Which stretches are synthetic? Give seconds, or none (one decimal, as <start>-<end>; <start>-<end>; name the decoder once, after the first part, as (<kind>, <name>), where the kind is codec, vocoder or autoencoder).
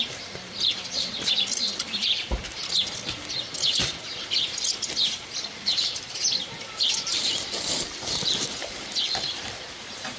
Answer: 0.0-10.2 (vocoder, BigVGAN v2)